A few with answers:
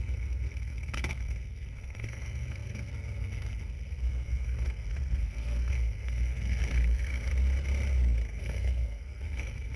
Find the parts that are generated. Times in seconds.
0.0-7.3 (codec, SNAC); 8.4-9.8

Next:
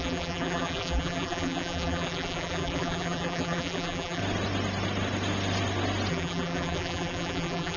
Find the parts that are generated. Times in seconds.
0.0-4.2 (vocoder, BigVGAN v2); 6.1-7.8

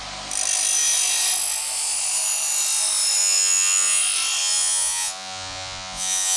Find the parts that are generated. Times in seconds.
3.2-4.0 (vocoder, Vocos); 4.4-6.4

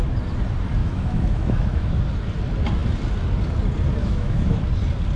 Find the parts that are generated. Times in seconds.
0.8-2.0 (autoencoder, DAC-VAE); 4.0-4.6

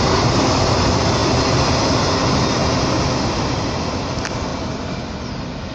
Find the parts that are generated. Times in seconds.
none

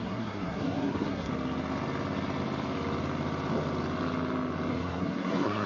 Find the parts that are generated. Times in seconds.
0.0-1.3 (codec, SNAC); 4.7-5.7

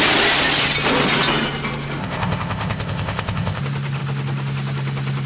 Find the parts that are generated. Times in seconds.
2.0-3.6 (codec, ZipCodec)

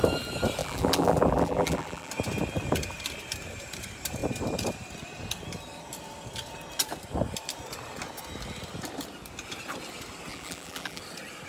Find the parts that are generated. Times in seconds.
0.6-2.1 (vocoder, BigVGAN v2); 10.3-11.0